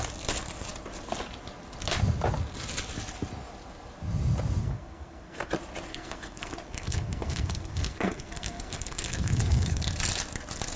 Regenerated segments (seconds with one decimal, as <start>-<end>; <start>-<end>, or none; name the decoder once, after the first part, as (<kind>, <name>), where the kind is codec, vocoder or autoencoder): 4.6-5.5 (codec, SNAC); 5.9-9.8